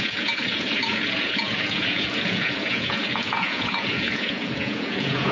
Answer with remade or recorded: remade